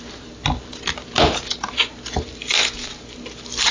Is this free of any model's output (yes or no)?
yes